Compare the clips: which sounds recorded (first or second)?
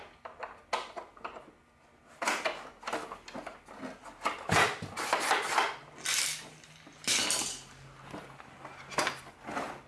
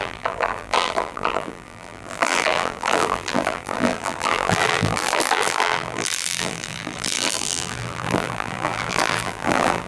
first